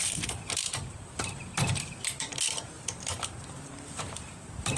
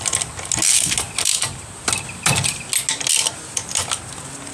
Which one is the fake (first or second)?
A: first